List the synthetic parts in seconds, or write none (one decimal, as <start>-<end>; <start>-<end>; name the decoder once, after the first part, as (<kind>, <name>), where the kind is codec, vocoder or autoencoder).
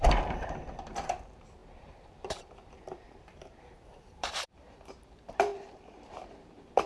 0.0-6.9 (vocoder, BigVGAN v2)